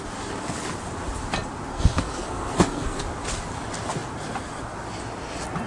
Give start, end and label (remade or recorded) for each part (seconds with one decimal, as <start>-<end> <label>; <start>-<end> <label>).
0.0-1.7 recorded; 1.7-3.0 remade; 3.0-5.7 recorded